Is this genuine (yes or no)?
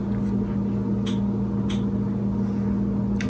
yes